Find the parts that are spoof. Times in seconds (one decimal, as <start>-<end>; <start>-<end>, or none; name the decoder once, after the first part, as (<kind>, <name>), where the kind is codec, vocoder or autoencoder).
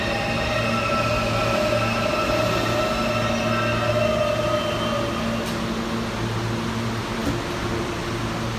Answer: none